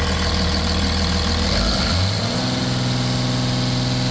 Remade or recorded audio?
recorded